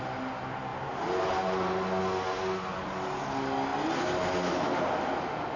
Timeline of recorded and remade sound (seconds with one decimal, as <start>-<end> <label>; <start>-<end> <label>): 0.0-5.6 recorded